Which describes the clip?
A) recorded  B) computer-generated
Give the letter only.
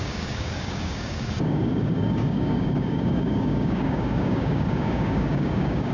B